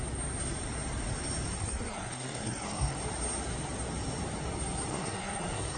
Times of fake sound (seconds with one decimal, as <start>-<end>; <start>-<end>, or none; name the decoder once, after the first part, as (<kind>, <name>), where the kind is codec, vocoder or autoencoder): 1.6-3.0 (codec, SNAC); 4.9-5.8